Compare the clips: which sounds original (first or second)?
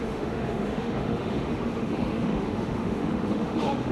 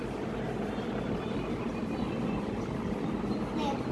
second